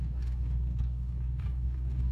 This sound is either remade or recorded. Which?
remade